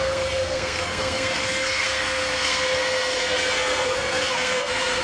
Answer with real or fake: fake